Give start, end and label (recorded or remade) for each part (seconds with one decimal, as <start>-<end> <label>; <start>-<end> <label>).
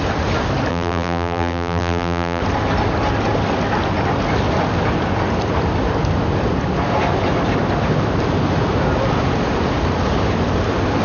0.0-0.7 recorded; 0.7-2.4 remade; 2.4-11.0 recorded